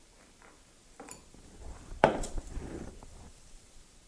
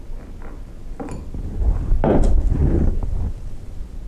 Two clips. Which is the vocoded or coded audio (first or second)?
first